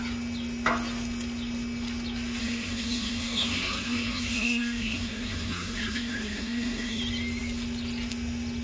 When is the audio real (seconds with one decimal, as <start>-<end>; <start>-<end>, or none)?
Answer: 0.0-2.4; 7.0-8.6